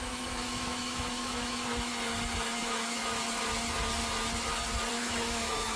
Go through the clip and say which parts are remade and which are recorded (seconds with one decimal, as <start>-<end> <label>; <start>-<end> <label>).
0.0-1.9 remade; 1.9-2.6 recorded; 2.6-3.0 remade; 3.0-4.9 recorded; 4.9-5.8 remade